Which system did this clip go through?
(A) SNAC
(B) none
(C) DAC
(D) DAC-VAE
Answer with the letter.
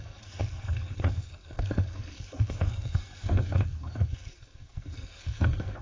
A